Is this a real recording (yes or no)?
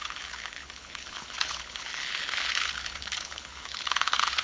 no